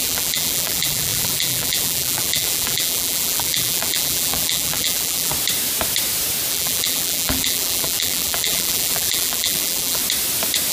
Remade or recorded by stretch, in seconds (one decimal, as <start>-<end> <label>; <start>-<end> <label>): 0.0-5.3 remade; 5.3-6.5 recorded; 6.5-10.0 remade; 10.0-10.7 recorded